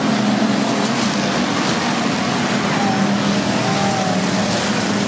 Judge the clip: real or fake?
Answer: real